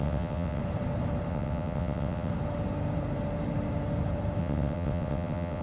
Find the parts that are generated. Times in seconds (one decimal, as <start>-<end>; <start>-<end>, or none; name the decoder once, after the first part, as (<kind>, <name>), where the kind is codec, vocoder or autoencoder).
0.0-0.6 (vocoder, WaveNeXt); 1.3-2.3; 4.4-5.6